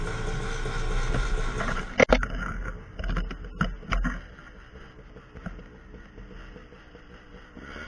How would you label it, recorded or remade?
recorded